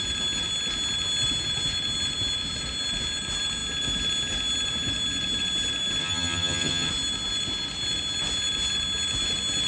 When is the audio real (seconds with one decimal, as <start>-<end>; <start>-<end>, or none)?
0.0-6.0; 6.9-9.7